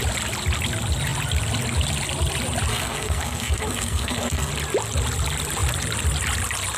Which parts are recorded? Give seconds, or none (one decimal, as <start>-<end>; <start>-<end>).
0.0-2.7; 4.5-6.8